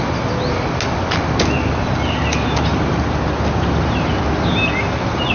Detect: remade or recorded recorded